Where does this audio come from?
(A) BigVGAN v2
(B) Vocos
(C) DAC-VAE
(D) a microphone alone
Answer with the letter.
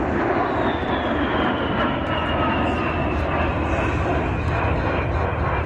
D